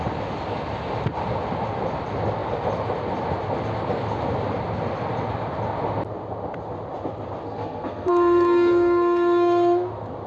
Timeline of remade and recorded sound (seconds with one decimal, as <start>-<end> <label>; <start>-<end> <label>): 0.0-7.4 recorded; 7.4-9.9 remade; 9.9-10.3 recorded